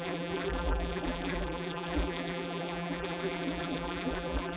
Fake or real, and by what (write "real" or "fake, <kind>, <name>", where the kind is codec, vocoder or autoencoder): fake, vocoder, BigVGAN v2